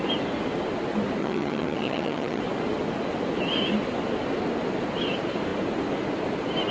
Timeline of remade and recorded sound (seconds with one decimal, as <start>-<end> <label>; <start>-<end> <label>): 0.0-1.2 recorded; 1.2-2.4 remade; 2.4-6.7 recorded